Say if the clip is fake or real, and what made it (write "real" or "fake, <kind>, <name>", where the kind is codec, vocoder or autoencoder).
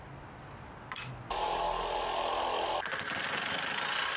real